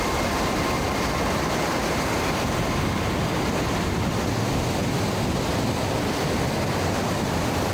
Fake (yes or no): yes